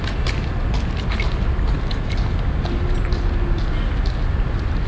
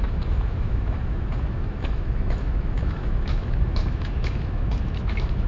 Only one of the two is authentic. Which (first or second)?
first